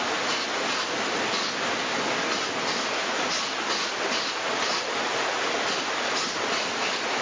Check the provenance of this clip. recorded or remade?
recorded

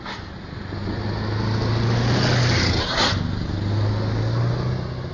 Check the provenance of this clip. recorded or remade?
recorded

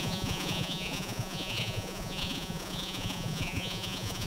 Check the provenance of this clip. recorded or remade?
remade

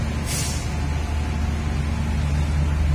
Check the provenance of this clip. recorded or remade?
recorded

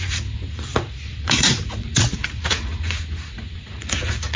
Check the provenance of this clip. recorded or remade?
remade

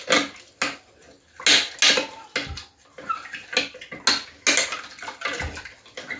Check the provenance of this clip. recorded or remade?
recorded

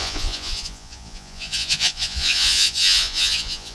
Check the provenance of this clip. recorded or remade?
remade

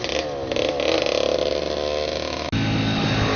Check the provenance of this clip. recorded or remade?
recorded